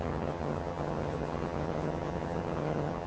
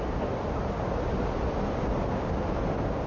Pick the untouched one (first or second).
second